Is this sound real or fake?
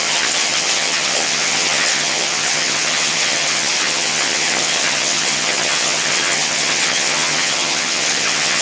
fake